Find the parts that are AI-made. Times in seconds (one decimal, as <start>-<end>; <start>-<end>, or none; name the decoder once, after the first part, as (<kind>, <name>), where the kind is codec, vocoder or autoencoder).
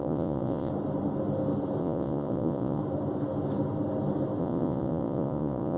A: 0.0-0.7 (vocoder, Vocos); 1.8-2.8; 4.4-5.8